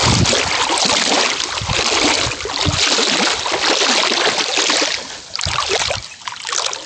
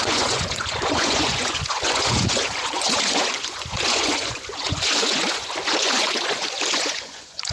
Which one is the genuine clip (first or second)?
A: first